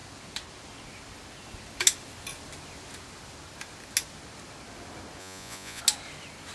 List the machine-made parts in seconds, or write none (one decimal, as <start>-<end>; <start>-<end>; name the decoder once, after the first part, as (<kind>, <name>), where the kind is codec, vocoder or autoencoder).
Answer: 5.2-5.8 (vocoder, Vocos)